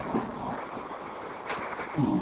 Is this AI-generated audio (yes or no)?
no